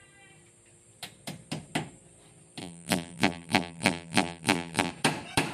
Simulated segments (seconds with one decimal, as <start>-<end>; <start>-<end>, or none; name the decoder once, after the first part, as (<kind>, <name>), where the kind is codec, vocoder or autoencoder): 2.6-4.9 (vocoder, BigVGAN v2)